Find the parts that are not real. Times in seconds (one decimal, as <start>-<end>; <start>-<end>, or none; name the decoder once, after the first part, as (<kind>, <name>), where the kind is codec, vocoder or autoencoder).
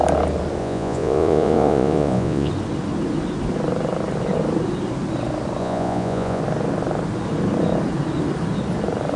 0.6-2.5 (vocoder, Vocos); 5.6-6.4